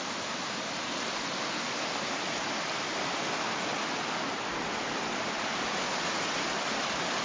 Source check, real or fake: real